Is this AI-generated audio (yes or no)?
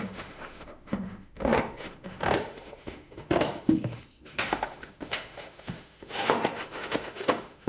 yes